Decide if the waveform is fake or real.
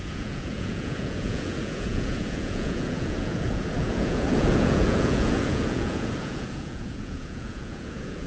fake